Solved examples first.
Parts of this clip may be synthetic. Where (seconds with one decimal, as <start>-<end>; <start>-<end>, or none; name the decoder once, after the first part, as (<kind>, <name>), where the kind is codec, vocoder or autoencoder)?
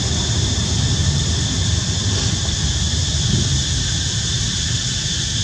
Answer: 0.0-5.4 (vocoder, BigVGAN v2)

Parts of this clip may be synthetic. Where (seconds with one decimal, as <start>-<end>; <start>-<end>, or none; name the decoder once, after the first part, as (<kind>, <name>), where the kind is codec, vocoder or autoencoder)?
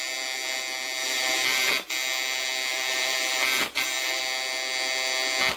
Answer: 1.0-1.7 (vocoder, BigVGAN v2); 2.7-4.2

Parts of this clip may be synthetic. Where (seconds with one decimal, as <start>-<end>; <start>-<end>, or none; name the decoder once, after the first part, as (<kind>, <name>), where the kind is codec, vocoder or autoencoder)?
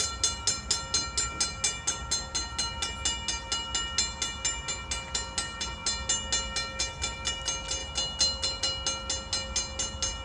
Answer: none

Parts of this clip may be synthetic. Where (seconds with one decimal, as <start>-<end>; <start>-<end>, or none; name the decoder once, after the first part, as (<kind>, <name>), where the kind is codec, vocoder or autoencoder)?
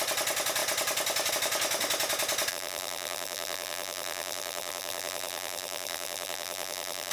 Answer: 2.5-7.1 (vocoder, BigVGAN v2)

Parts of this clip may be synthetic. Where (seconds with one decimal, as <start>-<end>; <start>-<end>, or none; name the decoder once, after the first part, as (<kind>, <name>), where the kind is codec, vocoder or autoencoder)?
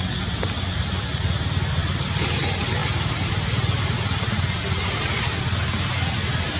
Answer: 1.8-2.4 (vocoder, BigVGAN v2)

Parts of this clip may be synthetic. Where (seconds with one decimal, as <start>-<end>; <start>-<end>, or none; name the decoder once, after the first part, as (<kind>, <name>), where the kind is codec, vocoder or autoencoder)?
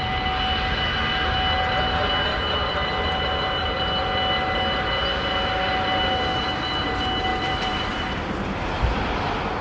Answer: 2.3-3.3 (vocoder, BigVGAN v2); 7.3-8.6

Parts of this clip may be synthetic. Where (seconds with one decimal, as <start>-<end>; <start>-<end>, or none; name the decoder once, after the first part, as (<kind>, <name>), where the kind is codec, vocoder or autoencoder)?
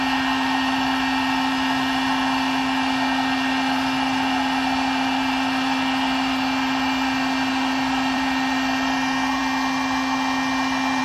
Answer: 0.0-9.4 (vocoder, BigVGAN v2)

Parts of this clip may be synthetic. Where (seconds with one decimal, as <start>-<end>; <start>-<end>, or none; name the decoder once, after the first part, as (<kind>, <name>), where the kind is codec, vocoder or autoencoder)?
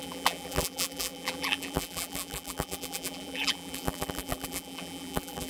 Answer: 0.0-5.5 (vocoder, BigVGAN v2)